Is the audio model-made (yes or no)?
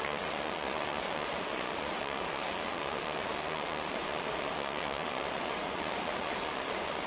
yes